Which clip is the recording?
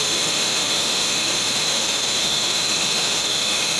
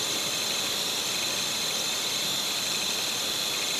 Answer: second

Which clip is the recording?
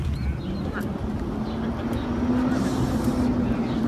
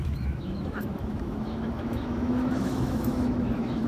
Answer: first